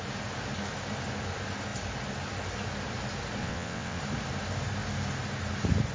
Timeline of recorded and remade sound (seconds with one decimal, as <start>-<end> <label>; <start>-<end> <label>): 0.0-3.4 recorded; 3.4-4.0 remade; 4.0-5.9 recorded